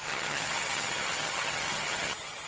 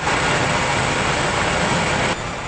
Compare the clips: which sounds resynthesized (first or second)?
first